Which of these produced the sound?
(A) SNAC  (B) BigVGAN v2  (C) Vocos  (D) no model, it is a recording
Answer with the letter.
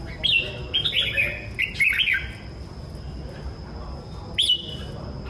D